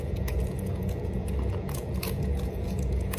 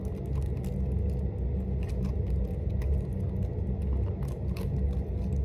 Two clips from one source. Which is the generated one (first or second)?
first